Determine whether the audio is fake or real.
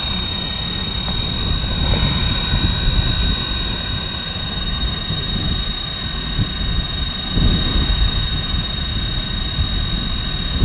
real